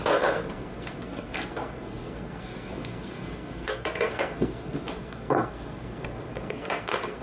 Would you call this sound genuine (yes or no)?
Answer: no